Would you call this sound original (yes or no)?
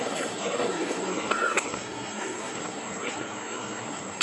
no